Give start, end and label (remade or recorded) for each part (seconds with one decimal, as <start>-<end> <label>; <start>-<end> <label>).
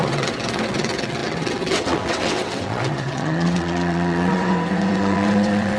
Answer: 0.0-5.8 remade